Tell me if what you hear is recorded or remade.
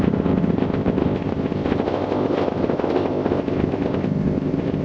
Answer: remade